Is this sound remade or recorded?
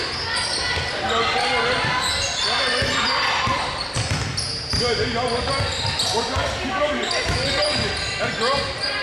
recorded